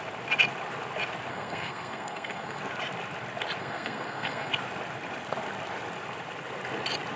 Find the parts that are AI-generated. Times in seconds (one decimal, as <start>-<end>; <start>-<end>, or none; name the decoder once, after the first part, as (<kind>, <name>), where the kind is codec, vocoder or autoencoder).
1.3-2.6 (codec, SNAC); 3.6-4.5